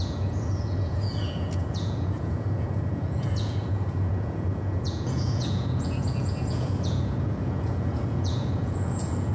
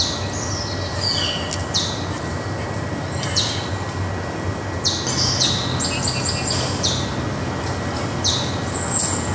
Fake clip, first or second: first